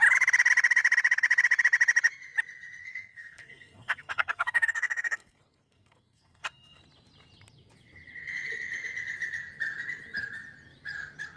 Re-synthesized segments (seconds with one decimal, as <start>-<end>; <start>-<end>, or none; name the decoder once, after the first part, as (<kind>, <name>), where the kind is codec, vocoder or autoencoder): 2.8-6.8 (codec, SNAC)